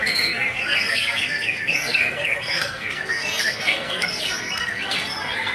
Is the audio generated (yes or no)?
yes